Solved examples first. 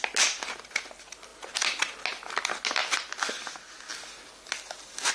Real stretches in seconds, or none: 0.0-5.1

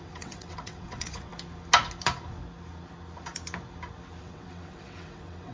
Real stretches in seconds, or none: 1.3-4.2

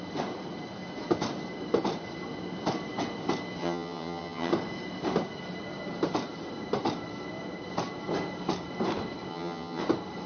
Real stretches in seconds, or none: 0.0-3.6; 4.5-9.3; 9.8-10.3